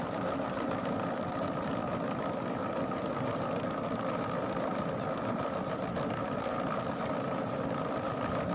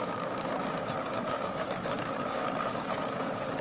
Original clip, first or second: first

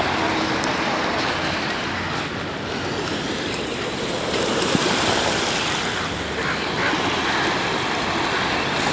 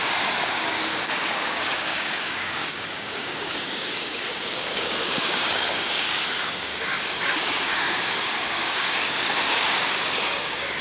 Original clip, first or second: first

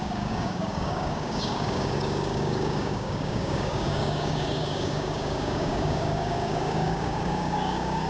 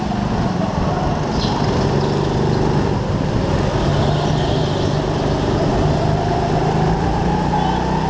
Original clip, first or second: second